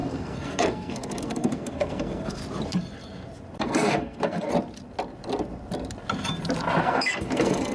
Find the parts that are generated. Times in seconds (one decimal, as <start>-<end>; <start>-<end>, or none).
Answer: 0.0-2.4; 3.6-4.5; 6.8-7.7